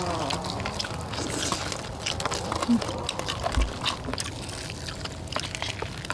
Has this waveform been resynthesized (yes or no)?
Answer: no